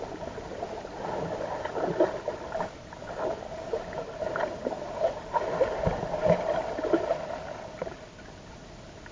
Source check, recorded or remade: recorded